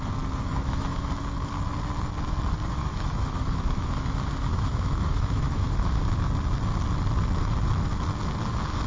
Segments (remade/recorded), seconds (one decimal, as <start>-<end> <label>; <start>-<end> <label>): 0.0-0.5 recorded; 0.5-1.1 remade; 1.1-2.7 recorded; 2.7-6.0 remade; 6.0-8.9 recorded